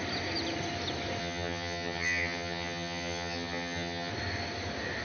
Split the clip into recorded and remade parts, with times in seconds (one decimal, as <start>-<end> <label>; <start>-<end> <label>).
0.0-1.2 recorded; 1.2-4.1 remade; 4.1-5.0 recorded